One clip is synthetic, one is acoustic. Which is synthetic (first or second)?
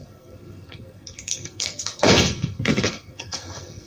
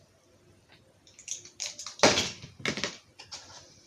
first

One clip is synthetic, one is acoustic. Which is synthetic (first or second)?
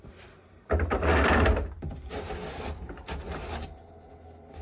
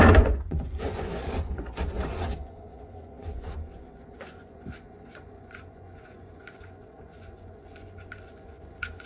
second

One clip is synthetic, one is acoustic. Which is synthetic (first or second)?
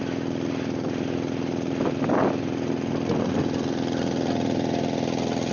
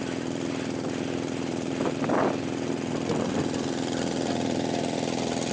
second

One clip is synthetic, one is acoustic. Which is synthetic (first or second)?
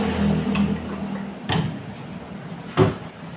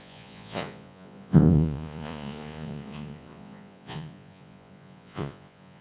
second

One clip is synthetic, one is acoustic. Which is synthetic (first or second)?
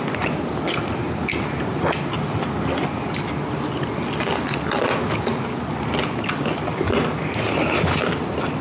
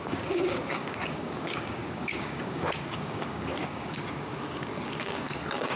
second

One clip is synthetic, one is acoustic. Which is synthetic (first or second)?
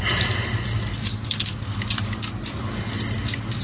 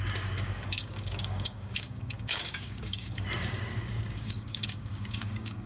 second